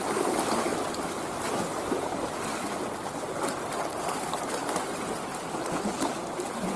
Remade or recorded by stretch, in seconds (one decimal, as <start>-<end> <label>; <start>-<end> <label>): 0.0-0.7 recorded; 0.7-4.8 remade; 4.8-6.8 recorded